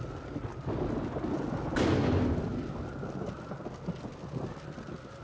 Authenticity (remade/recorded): recorded